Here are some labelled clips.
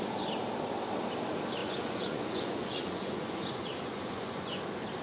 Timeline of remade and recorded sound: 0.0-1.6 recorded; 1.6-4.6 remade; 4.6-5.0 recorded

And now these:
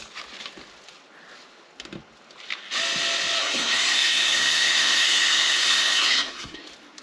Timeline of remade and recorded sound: 0.0-3.4 recorded; 3.4-6.6 remade; 6.6-7.0 recorded